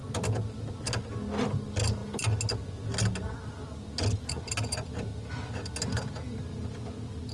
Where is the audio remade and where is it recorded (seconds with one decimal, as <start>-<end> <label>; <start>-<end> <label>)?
0.0-7.3 recorded